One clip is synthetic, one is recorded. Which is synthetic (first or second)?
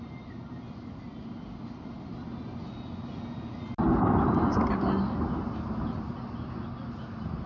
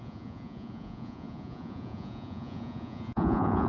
second